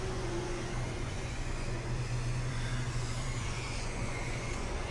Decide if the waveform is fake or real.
fake